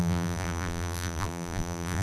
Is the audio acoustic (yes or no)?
no